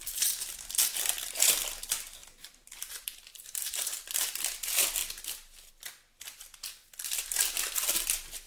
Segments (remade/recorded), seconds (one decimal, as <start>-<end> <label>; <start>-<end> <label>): 0.0-2.2 recorded; 2.2-4.0 remade; 4.0-8.5 recorded